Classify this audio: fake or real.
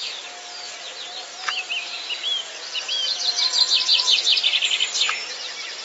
real